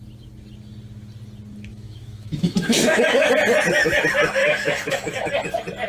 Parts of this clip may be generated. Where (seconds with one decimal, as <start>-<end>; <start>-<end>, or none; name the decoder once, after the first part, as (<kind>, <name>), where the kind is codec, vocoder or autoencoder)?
1.7-3.3 (autoencoder, DAC-VAE); 4.4-5.3